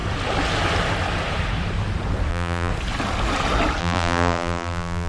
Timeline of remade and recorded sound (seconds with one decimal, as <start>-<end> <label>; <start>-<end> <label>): 0.0-2.3 recorded; 2.3-2.7 remade; 2.7-3.8 recorded; 3.8-5.1 remade